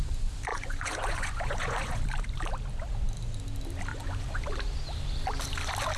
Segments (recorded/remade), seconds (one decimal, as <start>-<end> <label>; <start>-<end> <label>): 0.0-0.5 recorded; 0.5-2.0 remade; 2.0-3.9 recorded; 3.9-4.4 remade; 4.4-6.0 recorded

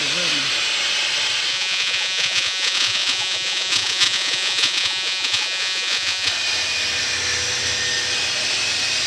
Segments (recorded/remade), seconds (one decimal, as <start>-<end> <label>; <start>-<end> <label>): 0.0-1.5 recorded; 1.5-6.3 remade; 6.3-9.1 recorded

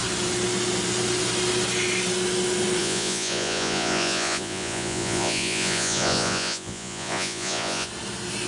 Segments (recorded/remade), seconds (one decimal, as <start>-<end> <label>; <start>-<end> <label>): 0.0-2.8 recorded; 2.8-7.9 remade; 7.9-8.5 recorded